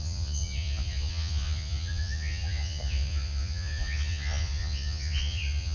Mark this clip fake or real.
fake